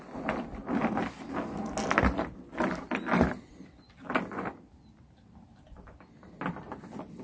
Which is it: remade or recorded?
recorded